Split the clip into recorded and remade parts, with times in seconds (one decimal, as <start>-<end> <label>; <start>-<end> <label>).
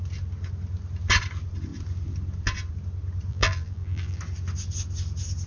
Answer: 0.0-3.3 recorded; 3.3-4.2 remade; 4.2-5.5 recorded